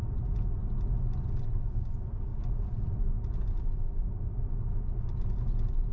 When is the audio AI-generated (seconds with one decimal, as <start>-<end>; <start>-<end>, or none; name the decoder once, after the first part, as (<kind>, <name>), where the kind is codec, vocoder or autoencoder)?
none